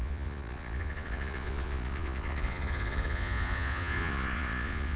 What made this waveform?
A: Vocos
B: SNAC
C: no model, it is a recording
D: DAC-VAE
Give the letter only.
A